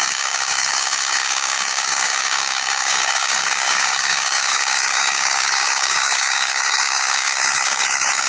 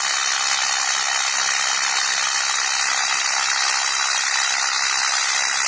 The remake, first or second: first